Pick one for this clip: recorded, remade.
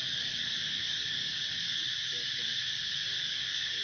remade